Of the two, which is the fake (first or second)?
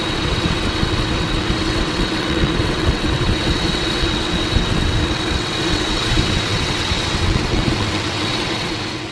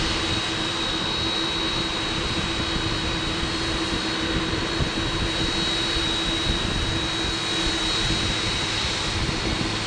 first